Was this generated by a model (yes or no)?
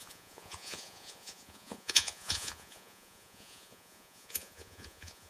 yes